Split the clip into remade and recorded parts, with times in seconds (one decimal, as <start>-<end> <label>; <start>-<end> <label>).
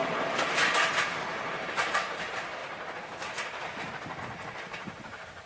0.0-5.5 recorded